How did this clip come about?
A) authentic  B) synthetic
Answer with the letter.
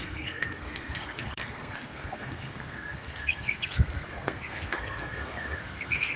B